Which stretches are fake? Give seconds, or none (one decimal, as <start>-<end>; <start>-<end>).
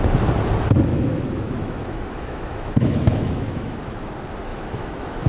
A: 0.9-4.1; 4.5-5.3